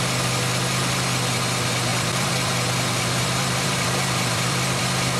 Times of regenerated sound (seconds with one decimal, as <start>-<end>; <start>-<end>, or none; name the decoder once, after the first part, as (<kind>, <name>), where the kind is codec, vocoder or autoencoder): 1.9-5.2 (vocoder, BigVGAN v2)